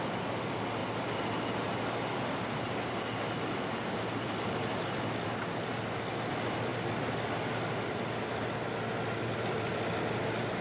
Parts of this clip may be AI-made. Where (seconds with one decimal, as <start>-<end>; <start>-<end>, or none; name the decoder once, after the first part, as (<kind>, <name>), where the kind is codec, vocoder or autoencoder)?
none